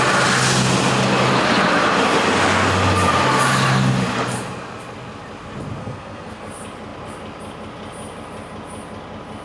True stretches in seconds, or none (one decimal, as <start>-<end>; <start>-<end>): 0.0-5.8; 6.4-9.4